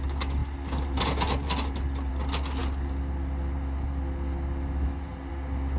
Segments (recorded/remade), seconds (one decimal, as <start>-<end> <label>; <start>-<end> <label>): 0.0-5.8 recorded